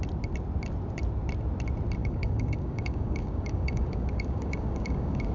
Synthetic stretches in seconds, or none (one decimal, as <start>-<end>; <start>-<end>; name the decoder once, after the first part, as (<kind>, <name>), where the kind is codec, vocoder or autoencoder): 2.0-5.3 (codec, DAC)